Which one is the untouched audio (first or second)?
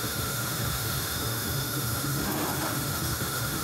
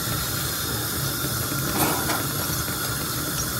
second